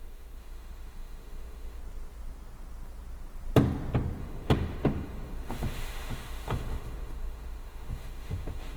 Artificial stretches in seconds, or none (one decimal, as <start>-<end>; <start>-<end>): 0.0-1.8; 4.2-8.8